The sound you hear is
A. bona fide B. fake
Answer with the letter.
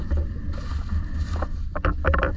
A